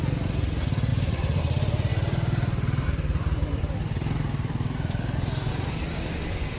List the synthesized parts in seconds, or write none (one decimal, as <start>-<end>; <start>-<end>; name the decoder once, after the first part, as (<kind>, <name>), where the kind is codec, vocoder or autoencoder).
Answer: 0.9-1.4 (vocoder, BigVGAN v2); 1.9-5.5